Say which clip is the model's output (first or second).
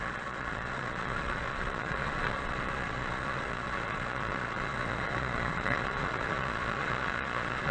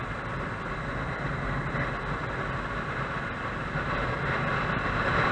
first